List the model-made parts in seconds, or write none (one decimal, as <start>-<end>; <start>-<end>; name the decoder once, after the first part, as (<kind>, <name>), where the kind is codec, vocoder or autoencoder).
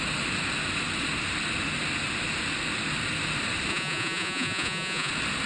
3.7-5.1 (vocoder, Vocos)